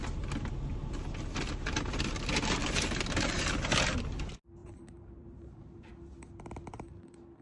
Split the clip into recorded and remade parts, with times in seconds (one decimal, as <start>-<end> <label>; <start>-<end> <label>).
0.0-2.6 recorded; 2.6-3.3 remade; 3.3-4.6 recorded; 4.6-5.9 remade; 5.9-7.4 recorded